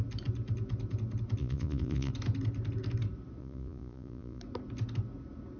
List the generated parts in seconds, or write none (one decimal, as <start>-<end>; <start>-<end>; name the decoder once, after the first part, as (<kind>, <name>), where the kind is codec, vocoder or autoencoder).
1.4-2.1 (vocoder, Vocos); 3.4-4.4